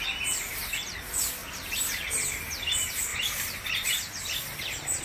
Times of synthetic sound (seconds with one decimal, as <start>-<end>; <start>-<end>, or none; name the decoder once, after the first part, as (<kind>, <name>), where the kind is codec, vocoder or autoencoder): 1.4-2.7 (vocoder, BigVGAN v2); 3.1-3.9